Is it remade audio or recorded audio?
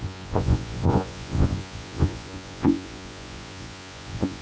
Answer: remade